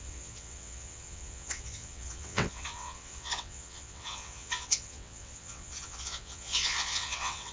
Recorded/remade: remade